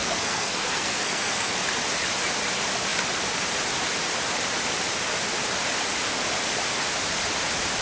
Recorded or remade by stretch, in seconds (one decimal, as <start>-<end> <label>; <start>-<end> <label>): 0.0-1.5 remade; 1.5-7.8 recorded